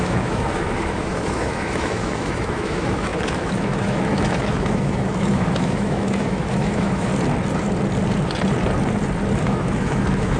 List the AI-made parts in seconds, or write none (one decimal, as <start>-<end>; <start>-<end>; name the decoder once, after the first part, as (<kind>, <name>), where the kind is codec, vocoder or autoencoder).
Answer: 0.0-7.1 (autoencoder, DAC-VAE); 9.4-10.4